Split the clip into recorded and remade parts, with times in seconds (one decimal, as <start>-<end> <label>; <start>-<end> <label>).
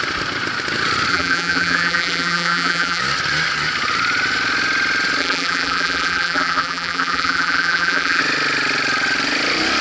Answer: 0.0-1.1 recorded; 1.1-3.0 remade; 3.0-5.2 recorded; 5.2-8.2 remade; 8.2-9.8 recorded